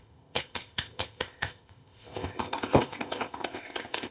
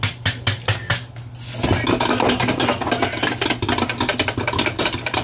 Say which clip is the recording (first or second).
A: second